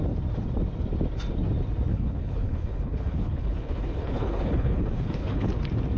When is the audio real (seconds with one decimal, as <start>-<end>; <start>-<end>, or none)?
0.0-1.9; 5.5-6.0